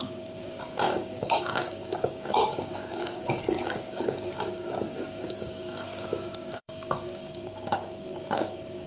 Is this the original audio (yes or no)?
no